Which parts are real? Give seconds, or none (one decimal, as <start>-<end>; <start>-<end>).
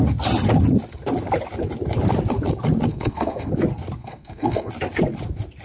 0.0-2.9; 3.5-4.0; 4.7-5.6